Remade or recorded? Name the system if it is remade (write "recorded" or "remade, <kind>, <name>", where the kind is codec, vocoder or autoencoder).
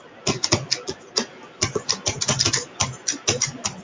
recorded